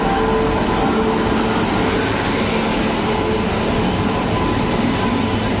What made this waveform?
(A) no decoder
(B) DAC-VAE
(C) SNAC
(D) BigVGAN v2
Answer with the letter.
A